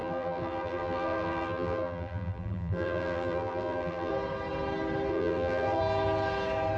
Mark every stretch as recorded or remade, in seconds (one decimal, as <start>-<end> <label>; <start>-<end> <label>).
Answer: 0.0-4.1 remade; 4.1-5.1 recorded; 5.1-5.8 remade; 5.8-6.8 recorded